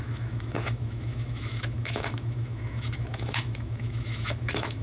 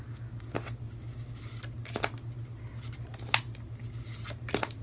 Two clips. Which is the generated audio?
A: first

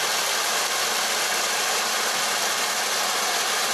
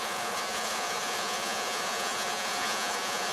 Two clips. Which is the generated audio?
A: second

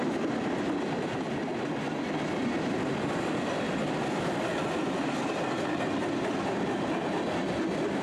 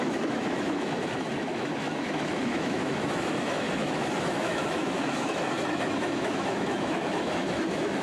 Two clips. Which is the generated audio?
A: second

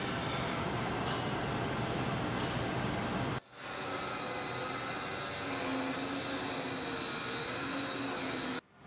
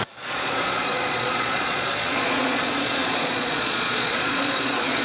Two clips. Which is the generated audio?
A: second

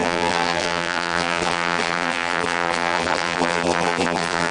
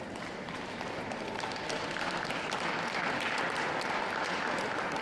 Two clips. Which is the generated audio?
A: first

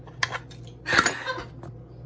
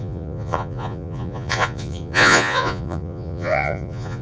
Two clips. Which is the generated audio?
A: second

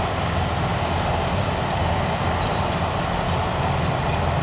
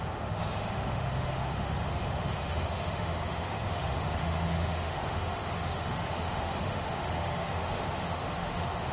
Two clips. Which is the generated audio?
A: second